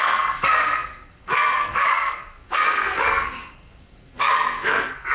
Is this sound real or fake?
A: fake